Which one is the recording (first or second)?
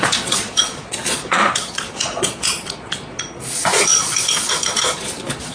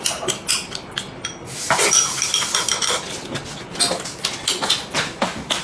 second